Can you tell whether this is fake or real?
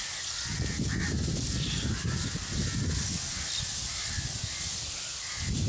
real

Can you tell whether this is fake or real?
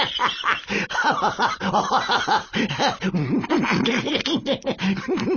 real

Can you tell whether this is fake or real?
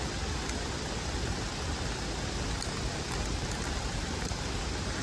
real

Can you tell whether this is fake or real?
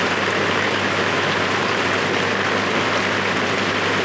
real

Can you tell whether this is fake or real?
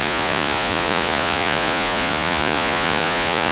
fake